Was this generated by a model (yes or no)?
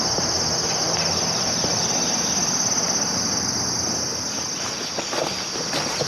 no